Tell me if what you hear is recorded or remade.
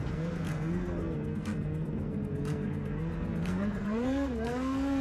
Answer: remade